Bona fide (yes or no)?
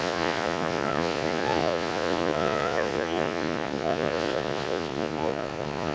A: no